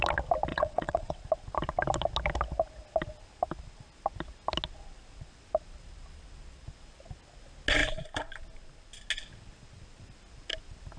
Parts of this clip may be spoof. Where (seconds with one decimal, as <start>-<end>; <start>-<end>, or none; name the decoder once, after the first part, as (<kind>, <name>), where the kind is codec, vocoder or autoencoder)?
0.5-1.2 (vocoder, WaveNeXt)